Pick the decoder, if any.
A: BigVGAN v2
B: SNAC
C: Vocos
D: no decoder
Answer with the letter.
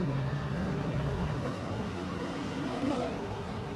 B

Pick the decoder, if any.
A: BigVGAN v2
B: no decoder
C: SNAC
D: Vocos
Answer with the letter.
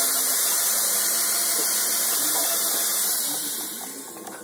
A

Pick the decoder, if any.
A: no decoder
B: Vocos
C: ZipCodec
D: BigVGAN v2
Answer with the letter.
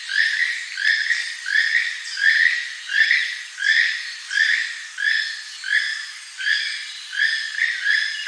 A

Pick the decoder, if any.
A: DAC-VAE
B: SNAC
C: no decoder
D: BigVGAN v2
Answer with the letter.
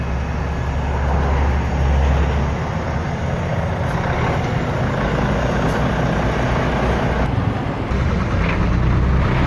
C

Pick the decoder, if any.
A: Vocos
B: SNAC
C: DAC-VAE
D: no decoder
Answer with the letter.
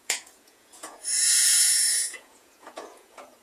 A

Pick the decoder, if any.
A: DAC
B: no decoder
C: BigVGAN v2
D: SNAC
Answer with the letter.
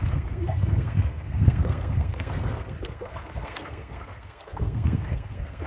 D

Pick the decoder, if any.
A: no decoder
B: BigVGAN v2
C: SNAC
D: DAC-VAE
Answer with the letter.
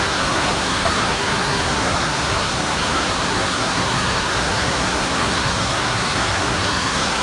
C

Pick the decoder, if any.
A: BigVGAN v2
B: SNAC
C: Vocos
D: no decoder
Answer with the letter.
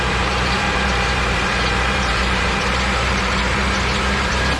A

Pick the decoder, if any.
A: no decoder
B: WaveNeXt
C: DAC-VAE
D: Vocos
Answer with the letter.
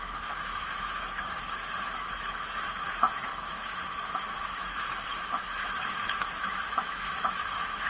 C